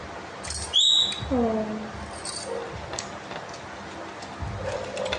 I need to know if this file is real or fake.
real